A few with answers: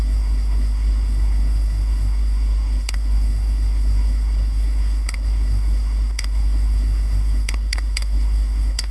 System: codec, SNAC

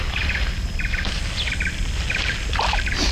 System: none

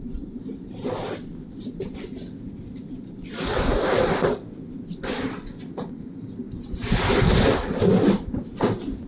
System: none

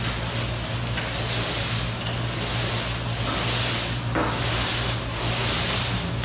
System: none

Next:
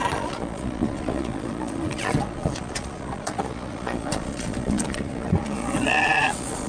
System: vocoder, Vocos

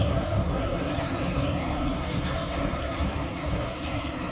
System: codec, SNAC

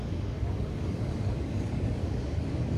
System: codec, DAC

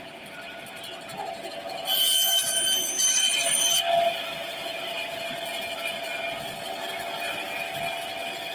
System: none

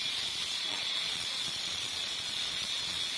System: vocoder, Vocos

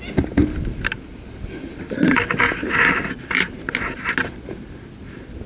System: none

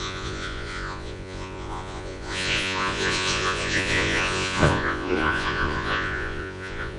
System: vocoder, Vocos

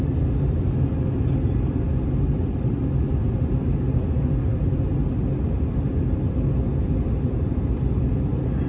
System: none